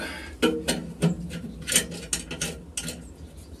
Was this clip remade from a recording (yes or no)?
no